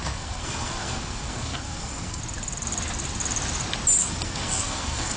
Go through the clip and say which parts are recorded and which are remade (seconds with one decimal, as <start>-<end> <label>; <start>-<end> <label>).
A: 0.0-2.2 remade; 2.2-4.0 recorded; 4.0-5.2 remade